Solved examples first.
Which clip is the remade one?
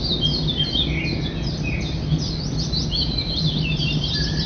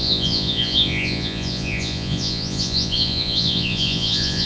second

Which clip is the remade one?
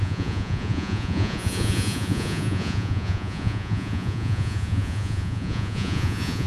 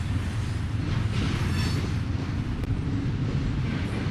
first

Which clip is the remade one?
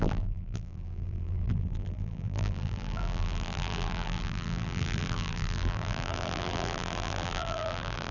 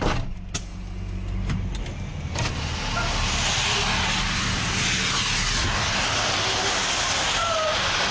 first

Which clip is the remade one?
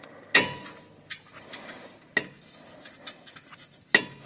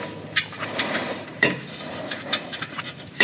second